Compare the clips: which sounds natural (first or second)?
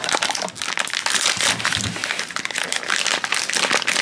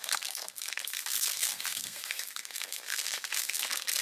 first